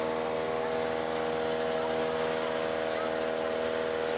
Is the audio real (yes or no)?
yes